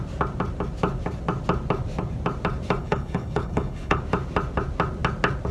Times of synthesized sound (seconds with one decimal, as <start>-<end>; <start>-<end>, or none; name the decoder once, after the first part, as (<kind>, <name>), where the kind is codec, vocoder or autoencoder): 2.8-4.0 (codec, HILCodec)